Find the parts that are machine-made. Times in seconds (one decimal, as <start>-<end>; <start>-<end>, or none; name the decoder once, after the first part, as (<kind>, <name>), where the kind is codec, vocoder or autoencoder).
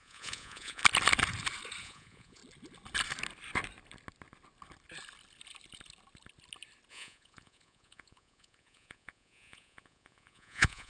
0.0-0.8 (vocoder, Vocos); 1.8-2.4; 6.9-10.9